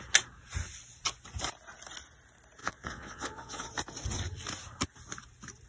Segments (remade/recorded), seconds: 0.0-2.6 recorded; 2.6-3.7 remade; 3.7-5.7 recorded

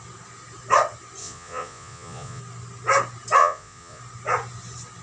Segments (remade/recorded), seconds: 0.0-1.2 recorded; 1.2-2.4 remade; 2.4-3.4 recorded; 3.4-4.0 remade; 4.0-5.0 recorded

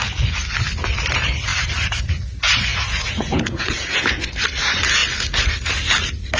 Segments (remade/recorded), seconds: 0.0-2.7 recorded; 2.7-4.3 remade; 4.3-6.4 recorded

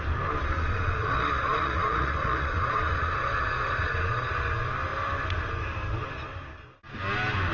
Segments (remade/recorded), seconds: 0.0-0.4 recorded; 0.4-4.3 remade; 4.3-7.5 recorded